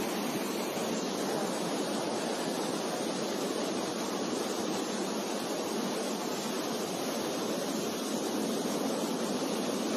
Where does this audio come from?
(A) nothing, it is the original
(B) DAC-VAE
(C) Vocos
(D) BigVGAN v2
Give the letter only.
A